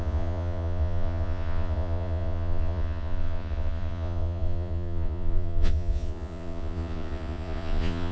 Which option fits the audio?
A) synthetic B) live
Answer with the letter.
A